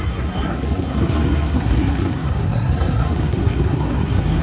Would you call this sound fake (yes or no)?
yes